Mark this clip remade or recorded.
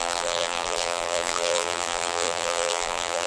remade